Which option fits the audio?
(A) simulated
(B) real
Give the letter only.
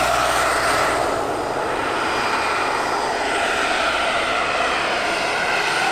B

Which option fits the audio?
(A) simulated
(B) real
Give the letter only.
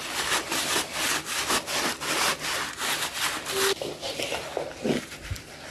B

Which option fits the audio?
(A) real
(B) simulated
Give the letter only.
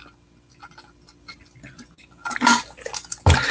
A